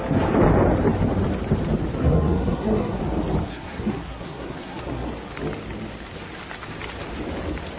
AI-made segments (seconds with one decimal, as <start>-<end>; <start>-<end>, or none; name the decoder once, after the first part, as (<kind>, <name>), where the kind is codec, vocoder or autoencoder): 2.0-3.0 (codec, SNAC); 3.5-5.1